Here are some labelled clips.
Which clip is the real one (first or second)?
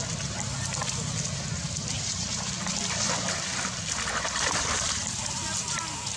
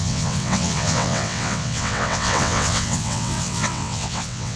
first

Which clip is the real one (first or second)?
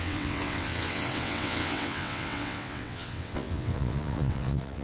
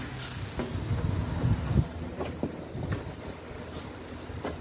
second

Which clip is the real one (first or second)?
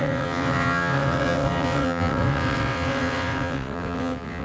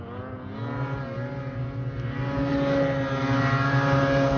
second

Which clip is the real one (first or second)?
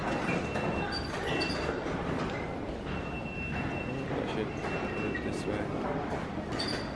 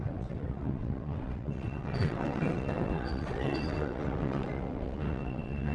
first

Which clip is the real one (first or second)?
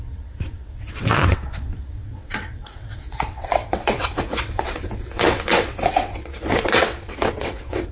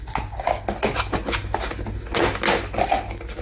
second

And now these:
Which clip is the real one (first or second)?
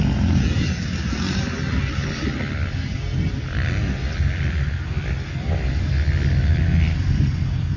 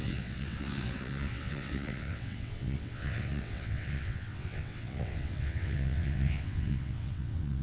first